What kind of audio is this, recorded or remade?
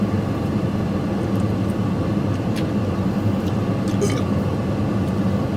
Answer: recorded